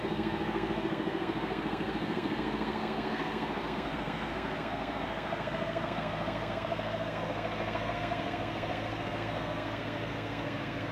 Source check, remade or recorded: remade